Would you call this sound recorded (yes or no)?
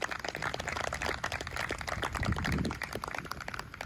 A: yes